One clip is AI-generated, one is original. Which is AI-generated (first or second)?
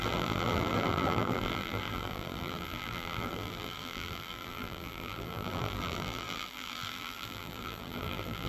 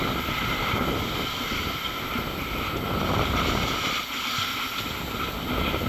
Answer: first